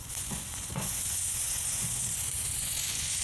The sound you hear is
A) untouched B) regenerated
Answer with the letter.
B